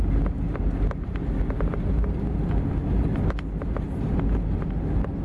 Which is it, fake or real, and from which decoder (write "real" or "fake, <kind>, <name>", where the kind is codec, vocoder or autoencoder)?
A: real